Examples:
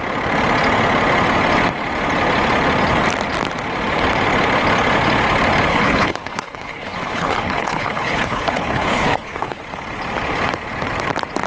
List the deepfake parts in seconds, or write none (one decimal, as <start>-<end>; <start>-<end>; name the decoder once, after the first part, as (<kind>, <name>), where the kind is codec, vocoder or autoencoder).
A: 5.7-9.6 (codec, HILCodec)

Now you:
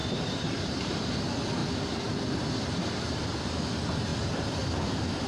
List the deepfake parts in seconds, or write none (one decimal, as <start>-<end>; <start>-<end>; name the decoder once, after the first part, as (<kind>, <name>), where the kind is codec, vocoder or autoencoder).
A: 0.0-0.9 (vocoder, BigVGAN v2)

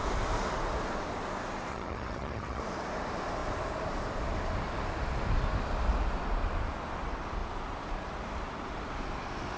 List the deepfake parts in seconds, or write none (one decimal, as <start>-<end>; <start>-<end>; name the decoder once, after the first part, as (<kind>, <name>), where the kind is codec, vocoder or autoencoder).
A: 1.7-2.6 (vocoder, HiFi-GAN)